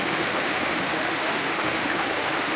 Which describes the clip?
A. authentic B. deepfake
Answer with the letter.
B